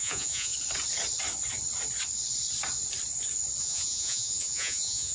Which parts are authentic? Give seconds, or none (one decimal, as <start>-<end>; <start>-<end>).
0.5-3.6